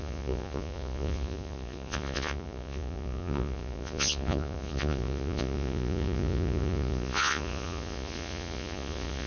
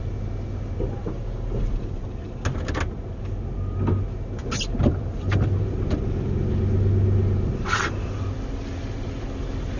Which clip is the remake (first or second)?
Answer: first